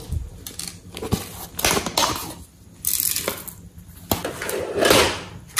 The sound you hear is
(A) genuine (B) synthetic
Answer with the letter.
A